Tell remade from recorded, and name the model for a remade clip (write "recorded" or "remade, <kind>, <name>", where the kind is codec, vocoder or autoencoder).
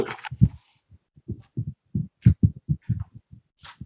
recorded